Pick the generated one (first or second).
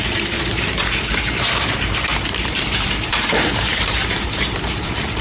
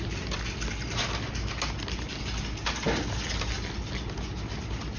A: first